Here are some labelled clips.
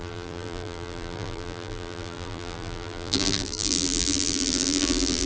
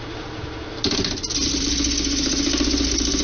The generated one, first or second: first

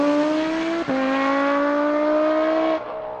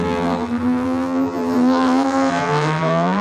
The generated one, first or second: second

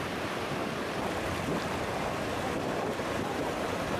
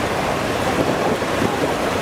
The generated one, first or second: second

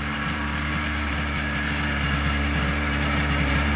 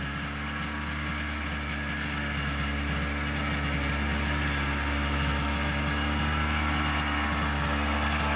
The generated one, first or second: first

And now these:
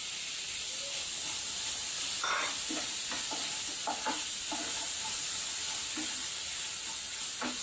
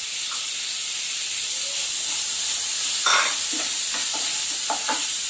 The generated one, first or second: second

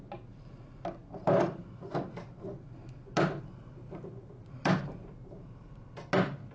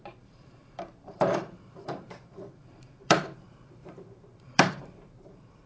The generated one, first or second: second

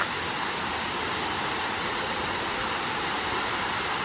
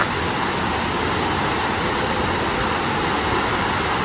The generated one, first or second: first